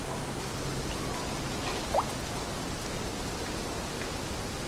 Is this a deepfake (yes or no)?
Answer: no